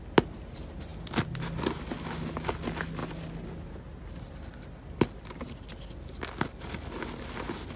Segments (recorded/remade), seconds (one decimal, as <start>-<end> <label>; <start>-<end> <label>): 0.0-7.8 recorded